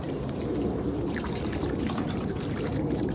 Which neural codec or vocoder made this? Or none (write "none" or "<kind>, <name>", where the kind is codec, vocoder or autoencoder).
vocoder, BigVGAN v2